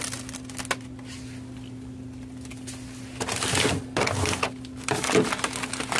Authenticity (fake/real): real